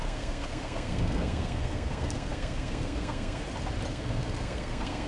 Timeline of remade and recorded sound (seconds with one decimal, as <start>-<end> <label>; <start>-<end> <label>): 0.0-3.4 remade; 3.4-3.9 recorded; 3.9-5.1 remade